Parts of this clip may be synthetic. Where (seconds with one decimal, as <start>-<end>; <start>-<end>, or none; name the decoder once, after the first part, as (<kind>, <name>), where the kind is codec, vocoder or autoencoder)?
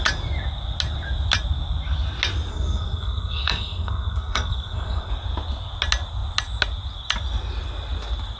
2.5-5.1 (codec, SNAC)